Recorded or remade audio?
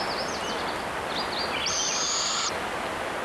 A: recorded